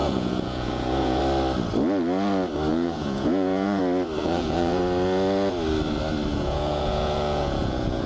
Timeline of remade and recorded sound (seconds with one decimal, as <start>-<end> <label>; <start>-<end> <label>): 0.0-1.2 remade; 1.2-2.7 recorded; 2.7-3.8 remade; 3.8-4.2 recorded; 4.2-4.8 remade; 4.8-6.3 recorded; 6.3-8.1 remade